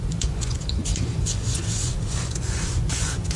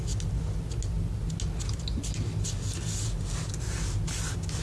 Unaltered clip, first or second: second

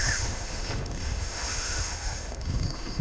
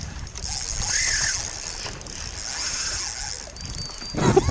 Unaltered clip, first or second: second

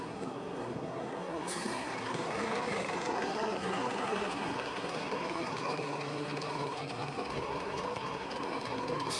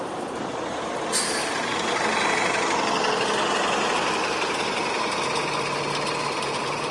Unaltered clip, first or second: second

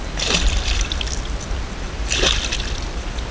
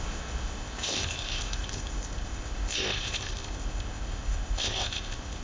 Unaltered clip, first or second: first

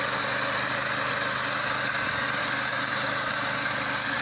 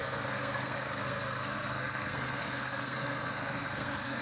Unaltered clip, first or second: first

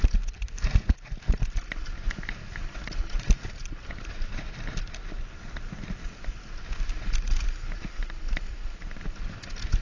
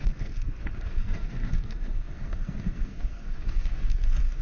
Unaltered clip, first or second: first